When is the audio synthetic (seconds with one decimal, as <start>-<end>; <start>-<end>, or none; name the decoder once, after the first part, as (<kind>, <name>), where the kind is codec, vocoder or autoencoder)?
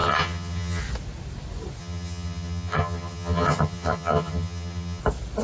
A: 0.0-0.8 (vocoder, HiFi-GAN); 1.8-5.0